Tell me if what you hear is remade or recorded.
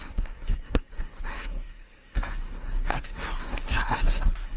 remade